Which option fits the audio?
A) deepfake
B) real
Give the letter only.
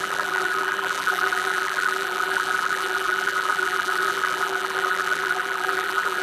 A